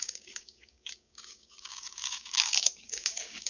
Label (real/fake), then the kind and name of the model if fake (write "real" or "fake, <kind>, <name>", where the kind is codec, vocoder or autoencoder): fake, codec, DAC